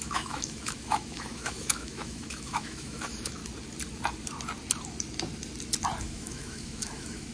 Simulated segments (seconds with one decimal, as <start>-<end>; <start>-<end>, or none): 0.0-3.4; 6.0-7.3